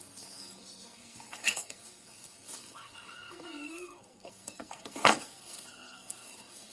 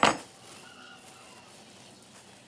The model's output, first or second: first